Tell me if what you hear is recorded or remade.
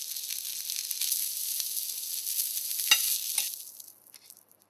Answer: recorded